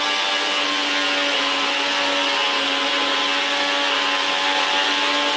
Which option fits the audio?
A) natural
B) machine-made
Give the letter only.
A